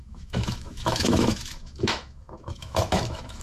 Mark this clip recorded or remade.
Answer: remade